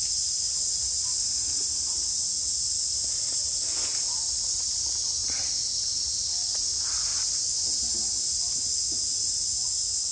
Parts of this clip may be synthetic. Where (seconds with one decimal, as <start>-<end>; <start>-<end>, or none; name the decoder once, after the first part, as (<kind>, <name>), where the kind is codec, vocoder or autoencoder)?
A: 5.2-6.3 (vocoder, BigVGAN v2)